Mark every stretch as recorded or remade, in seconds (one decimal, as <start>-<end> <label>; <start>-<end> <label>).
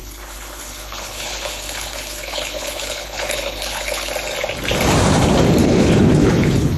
0.0-4.1 remade; 4.1-5.6 recorded; 5.6-6.8 remade